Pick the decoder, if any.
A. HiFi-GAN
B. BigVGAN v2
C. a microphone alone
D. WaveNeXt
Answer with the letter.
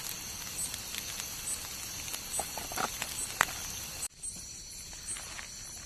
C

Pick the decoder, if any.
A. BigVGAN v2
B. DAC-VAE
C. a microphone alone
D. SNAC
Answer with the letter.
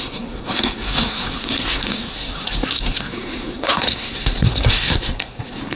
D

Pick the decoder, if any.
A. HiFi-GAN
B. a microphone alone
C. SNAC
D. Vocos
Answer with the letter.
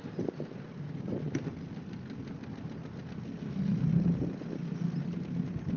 B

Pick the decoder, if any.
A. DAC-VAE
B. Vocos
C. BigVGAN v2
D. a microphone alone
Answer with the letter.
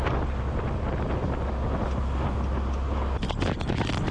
D